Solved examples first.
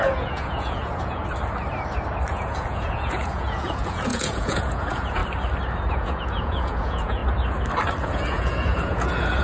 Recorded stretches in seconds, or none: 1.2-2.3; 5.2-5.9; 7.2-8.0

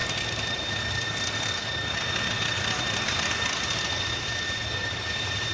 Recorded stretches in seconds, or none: 0.0-4.8

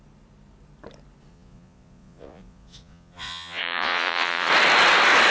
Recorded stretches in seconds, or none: 0.0-1.3; 4.5-5.3

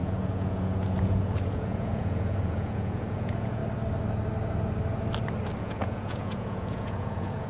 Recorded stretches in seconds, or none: 3.6-5.6

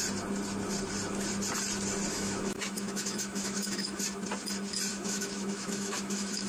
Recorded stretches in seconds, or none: 0.0-2.1; 4.0-4.9